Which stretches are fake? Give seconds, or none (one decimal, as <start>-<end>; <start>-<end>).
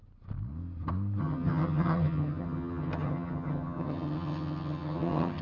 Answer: 1.2-5.4